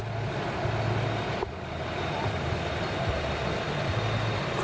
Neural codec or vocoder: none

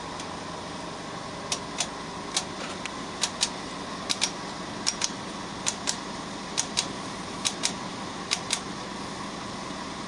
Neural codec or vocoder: none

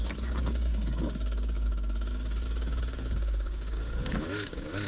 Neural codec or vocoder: codec, DAC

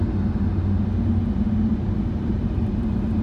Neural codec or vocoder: none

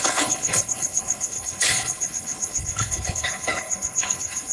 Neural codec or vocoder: codec, HILCodec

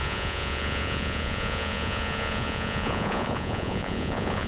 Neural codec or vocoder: vocoder, Vocos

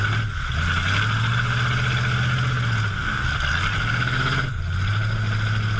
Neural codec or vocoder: none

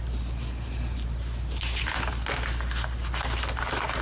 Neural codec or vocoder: none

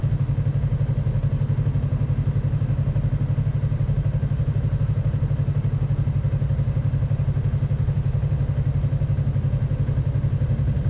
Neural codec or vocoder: none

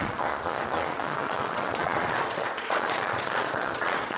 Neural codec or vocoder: vocoder, Vocos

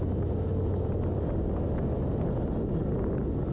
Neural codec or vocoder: none